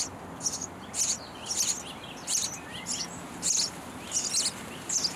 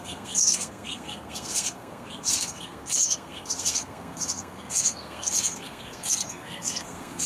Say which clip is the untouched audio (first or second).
first